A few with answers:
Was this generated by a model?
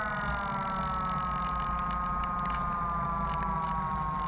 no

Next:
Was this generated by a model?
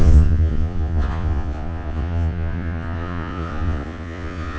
yes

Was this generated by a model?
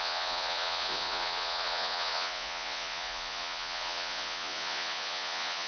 yes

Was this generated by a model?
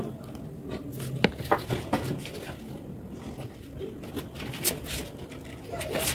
no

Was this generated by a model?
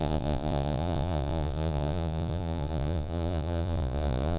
yes